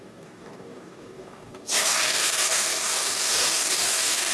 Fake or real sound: fake